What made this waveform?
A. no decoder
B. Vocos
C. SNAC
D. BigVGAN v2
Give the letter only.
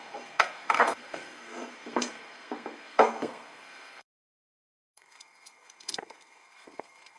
C